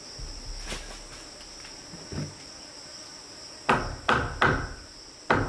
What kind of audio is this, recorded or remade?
recorded